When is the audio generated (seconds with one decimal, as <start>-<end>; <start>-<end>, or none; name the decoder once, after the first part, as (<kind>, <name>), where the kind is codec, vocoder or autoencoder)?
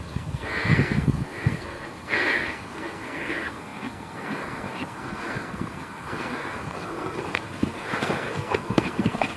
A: 0.0-9.4 (codec, SNAC)